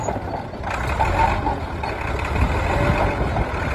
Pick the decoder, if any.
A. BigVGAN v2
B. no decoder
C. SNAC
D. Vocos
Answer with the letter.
B